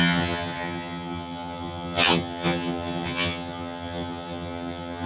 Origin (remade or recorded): remade